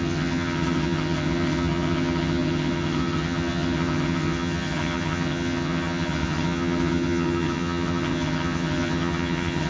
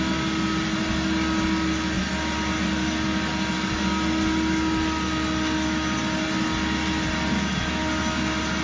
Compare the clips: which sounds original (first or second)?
second